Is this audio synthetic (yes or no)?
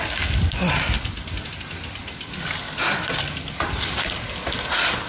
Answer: no